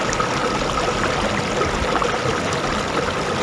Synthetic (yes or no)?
no